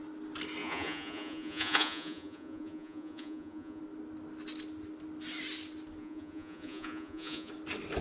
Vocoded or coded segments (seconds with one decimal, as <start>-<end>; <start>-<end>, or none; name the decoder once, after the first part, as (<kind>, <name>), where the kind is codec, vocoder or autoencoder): 0.6-3.8 (vocoder, Vocos); 6.0-7.5